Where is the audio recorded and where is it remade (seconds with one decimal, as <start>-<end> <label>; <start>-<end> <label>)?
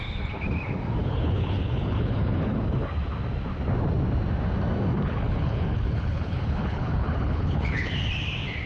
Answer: 0.0-1.0 recorded; 1.0-2.9 remade; 2.9-4.9 recorded; 4.9-7.9 remade; 7.9-8.7 recorded